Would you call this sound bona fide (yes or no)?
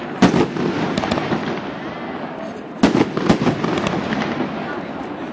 yes